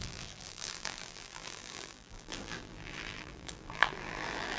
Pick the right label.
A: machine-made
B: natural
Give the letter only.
A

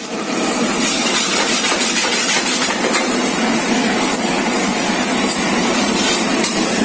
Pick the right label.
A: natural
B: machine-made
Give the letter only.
B